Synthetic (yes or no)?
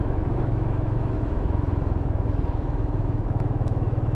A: yes